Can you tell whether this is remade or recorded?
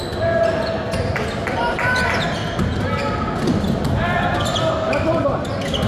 recorded